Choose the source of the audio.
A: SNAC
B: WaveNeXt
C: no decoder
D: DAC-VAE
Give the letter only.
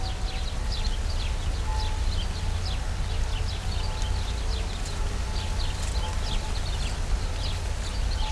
C